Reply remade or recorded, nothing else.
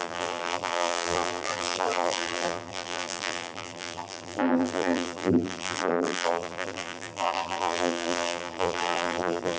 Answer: remade